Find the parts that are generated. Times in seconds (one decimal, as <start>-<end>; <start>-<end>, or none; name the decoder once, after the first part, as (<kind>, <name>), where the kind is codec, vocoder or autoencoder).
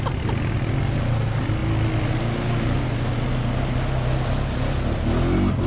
none